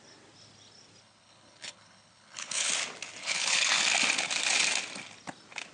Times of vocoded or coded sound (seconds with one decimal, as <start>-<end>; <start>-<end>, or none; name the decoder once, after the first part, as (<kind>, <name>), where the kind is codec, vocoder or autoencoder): 1.0-2.7 (codec, HILCodec); 3.2-3.8